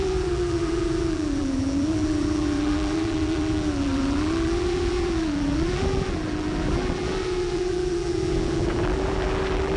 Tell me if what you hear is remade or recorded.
remade